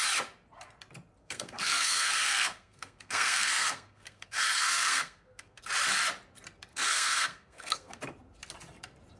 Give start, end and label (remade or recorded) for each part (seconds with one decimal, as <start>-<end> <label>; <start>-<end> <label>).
0.0-1.2 recorded; 1.2-5.6 remade; 5.6-6.7 recorded; 6.7-8.0 remade; 8.0-9.2 recorded